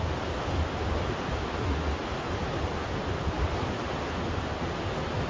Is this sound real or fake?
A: real